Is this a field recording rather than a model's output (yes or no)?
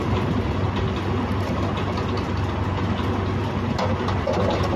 yes